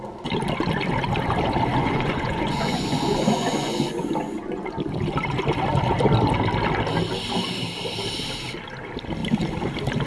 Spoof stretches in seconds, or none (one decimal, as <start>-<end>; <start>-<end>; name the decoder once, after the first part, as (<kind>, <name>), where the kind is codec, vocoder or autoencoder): 1.8-4.7 (vocoder, Vocos)